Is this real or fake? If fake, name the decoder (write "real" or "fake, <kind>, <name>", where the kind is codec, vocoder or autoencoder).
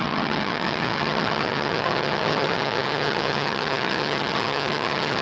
fake, vocoder, HiFi-GAN